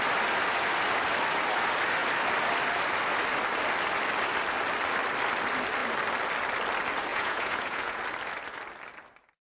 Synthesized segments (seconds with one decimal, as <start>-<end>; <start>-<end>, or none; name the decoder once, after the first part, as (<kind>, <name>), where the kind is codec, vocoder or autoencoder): 7.1-8.0 (vocoder, Vocos)